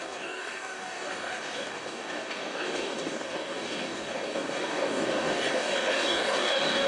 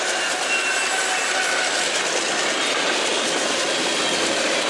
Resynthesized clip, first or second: first